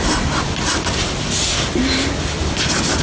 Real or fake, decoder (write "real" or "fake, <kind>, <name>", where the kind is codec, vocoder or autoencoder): real